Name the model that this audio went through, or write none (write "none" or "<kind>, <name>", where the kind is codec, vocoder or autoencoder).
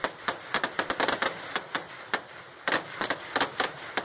none